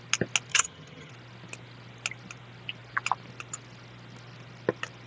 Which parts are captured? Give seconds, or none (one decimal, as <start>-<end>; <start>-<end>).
0.0-0.5; 1.1-5.1